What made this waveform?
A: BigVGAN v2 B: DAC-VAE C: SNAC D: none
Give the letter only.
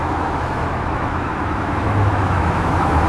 B